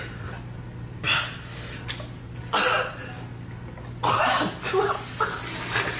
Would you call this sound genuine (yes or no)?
yes